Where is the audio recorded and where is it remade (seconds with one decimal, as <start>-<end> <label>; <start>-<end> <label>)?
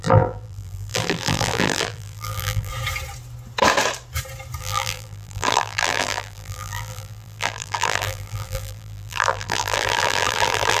0.0-2.7 remade; 2.7-4.6 recorded; 4.6-10.8 remade